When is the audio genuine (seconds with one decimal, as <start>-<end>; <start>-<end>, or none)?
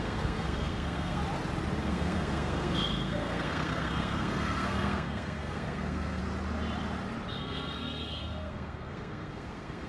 1.2-1.8; 6.2-7.3